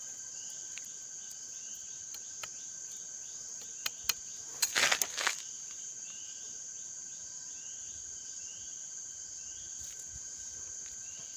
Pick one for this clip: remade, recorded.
recorded